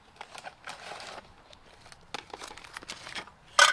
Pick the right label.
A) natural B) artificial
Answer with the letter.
A